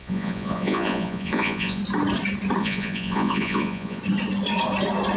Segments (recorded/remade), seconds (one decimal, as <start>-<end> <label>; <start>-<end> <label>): 0.0-1.8 remade; 1.8-2.6 recorded; 2.6-4.0 remade; 4.0-5.2 recorded

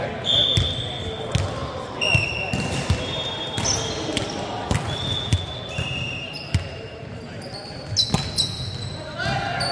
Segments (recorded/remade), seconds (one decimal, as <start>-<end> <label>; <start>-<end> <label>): 0.0-9.7 recorded

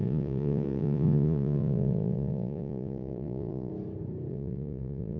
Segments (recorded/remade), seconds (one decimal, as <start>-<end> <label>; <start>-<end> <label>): 0.0-3.7 remade; 3.7-4.3 recorded; 4.3-5.2 remade